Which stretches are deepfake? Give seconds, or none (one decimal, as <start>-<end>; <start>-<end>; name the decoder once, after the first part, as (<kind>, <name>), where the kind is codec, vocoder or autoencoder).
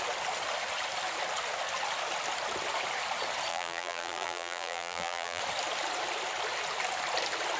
3.5-5.4 (vocoder, BigVGAN v2)